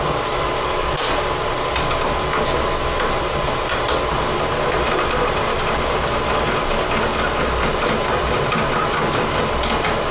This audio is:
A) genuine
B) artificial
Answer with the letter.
A